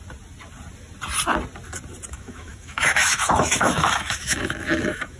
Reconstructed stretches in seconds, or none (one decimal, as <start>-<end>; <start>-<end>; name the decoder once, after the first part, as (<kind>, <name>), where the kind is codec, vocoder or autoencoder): 2.1-5.2 (autoencoder, DAC-VAE)